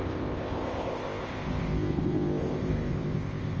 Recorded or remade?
remade